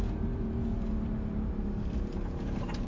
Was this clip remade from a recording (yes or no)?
yes